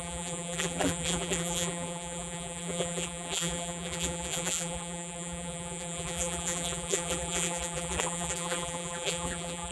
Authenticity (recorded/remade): remade